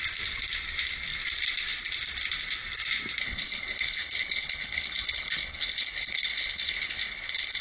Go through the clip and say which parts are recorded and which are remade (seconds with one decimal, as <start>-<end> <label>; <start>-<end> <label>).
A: 0.0-3.2 recorded; 3.2-7.6 remade